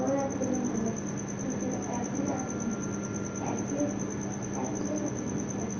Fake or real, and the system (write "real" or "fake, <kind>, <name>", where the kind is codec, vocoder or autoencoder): real